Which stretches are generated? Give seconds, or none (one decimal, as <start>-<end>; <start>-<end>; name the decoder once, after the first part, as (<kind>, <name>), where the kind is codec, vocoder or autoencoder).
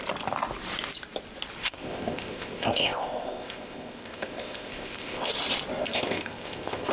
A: 1.6-5.3 (codec, ZipCodec); 5.8-6.9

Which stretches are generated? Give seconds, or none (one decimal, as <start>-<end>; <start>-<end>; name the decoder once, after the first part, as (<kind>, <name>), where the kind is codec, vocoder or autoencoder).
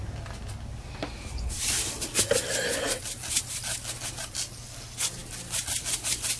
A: none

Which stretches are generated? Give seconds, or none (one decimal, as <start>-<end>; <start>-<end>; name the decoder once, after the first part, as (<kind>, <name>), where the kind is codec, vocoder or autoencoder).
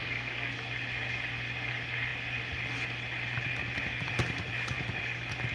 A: 0.0-0.5 (codec, SNAC)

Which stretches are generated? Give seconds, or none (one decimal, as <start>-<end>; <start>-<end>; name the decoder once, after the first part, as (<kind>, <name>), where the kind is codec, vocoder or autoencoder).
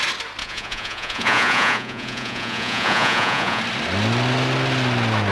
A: 0.4-3.6 (vocoder, Vocos)